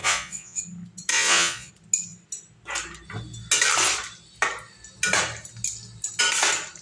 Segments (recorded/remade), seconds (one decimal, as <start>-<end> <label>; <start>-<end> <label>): 0.0-0.6 remade; 0.6-1.1 recorded; 1.1-1.7 remade; 1.7-6.8 recorded